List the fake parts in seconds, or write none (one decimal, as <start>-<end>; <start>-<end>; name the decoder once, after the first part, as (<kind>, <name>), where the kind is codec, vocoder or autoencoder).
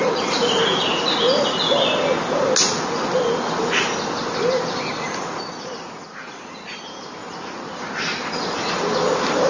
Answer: 0.0-0.6 (vocoder, BigVGAN v2); 4.5-7.2